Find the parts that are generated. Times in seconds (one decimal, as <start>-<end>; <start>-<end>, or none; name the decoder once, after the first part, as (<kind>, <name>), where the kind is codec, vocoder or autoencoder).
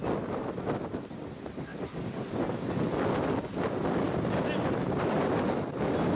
none